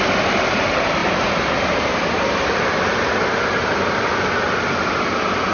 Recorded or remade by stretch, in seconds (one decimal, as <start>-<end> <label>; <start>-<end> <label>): 0.0-1.0 recorded; 1.0-4.3 remade; 4.3-5.5 recorded